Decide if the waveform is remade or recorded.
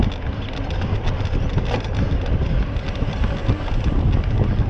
recorded